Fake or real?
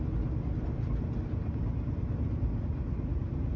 real